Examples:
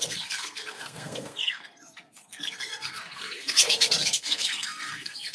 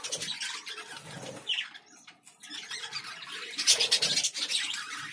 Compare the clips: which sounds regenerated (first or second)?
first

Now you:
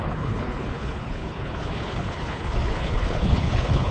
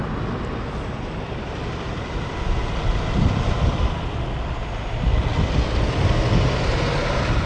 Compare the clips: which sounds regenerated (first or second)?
first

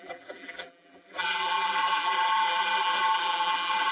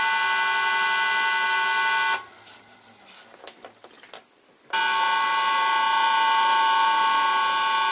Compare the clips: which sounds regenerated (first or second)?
first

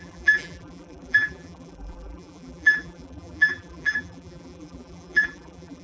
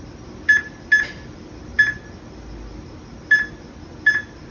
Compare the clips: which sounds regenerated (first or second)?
first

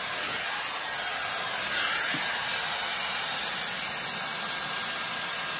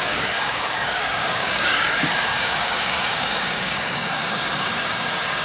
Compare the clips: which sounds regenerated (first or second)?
second